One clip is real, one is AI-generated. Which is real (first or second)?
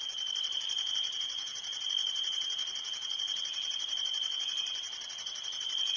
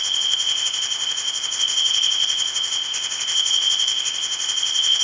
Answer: first